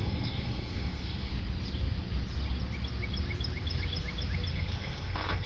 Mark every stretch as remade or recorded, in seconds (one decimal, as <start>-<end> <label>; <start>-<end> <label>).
0.0-1.3 remade; 1.3-4.5 recorded; 4.5-5.5 remade